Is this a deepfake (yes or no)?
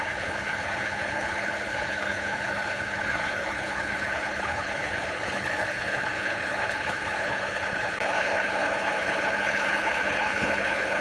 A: yes